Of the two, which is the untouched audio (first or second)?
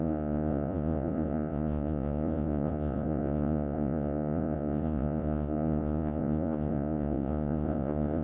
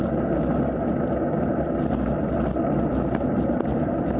second